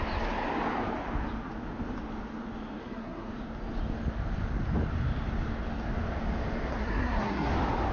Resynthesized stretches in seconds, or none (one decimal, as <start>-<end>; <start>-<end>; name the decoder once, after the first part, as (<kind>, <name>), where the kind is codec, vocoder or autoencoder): 2.8-3.3 (codec, SNAC); 6.7-7.5